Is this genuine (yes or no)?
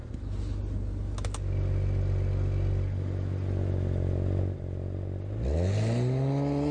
yes